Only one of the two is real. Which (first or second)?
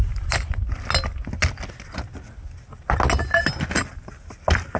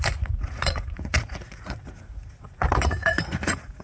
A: first